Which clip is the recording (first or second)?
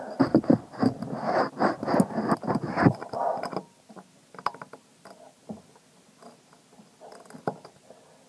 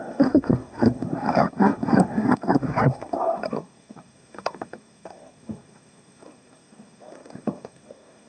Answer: first